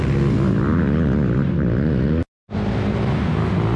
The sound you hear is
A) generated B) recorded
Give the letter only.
B